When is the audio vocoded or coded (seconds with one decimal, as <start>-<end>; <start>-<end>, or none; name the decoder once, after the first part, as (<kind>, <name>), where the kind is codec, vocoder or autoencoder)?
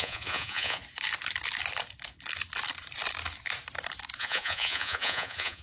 0.0-0.8 (vocoder, Vocos); 4.2-5.6